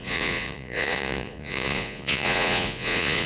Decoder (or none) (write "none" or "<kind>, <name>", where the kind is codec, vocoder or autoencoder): vocoder, Vocos